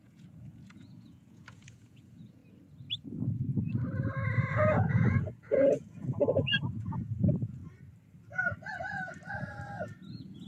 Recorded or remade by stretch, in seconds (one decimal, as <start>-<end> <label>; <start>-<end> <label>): 0.0-2.4 remade; 2.4-4.5 recorded; 4.5-7.6 remade; 7.6-10.1 recorded; 10.1-10.5 remade